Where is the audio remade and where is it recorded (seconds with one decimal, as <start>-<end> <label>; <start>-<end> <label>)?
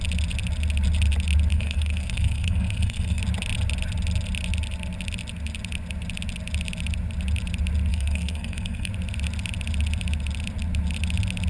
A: 0.0-1.5 recorded; 1.5-3.2 remade; 3.2-7.9 recorded; 7.9-8.9 remade; 8.9-11.5 recorded